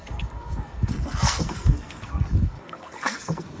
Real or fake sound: fake